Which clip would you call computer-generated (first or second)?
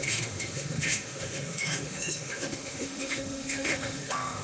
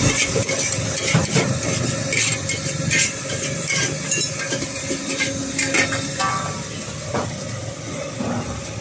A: first